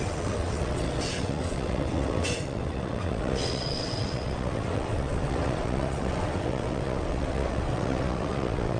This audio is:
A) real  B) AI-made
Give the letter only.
B